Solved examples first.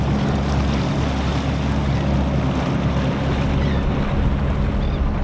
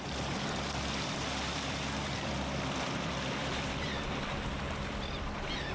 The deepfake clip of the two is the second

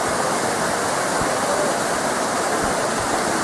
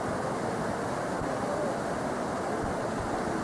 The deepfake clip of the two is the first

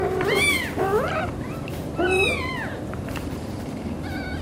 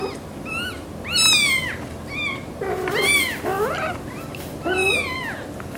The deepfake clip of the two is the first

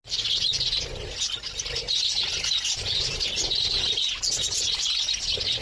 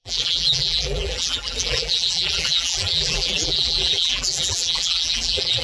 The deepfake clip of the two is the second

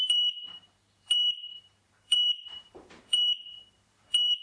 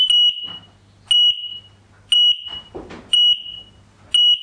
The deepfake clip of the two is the first